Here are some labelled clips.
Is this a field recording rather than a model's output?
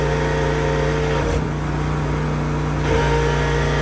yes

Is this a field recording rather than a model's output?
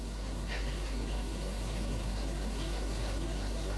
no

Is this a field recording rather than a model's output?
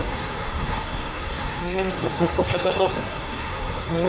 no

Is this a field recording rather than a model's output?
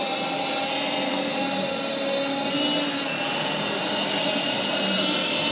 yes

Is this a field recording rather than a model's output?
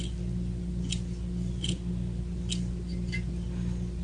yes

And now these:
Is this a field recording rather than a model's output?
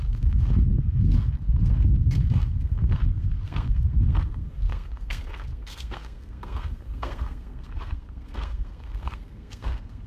no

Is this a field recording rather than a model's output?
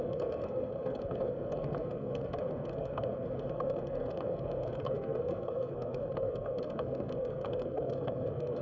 no